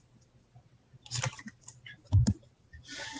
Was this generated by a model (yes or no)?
no